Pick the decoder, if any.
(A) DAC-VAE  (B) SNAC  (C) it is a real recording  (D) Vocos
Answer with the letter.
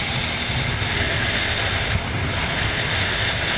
C